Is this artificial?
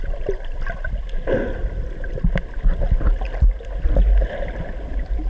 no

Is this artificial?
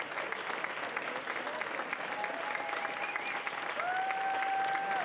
no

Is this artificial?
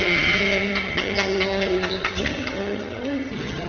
yes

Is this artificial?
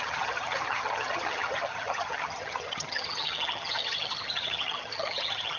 yes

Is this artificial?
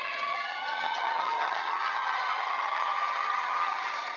yes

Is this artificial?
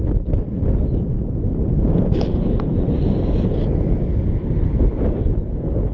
no